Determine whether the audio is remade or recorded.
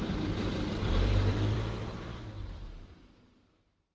remade